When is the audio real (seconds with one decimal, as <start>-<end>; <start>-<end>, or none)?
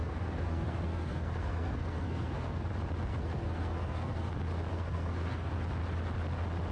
2.7-3.1; 4.3-4.7; 5.5-6.7